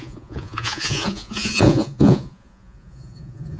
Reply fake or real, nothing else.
fake